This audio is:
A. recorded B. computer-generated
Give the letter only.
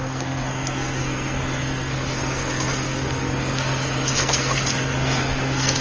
B